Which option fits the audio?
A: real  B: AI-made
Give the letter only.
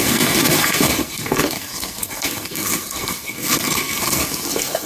B